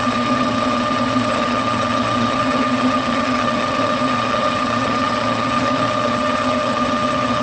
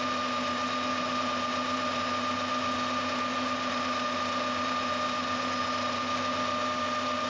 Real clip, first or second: second